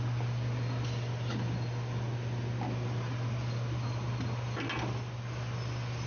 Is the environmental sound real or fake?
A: real